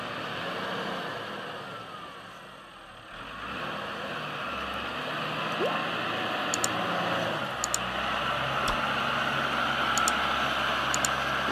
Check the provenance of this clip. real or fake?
real